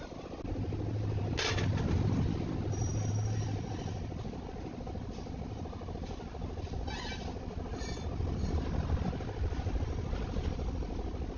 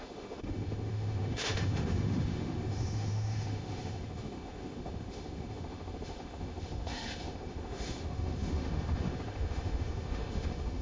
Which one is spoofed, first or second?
second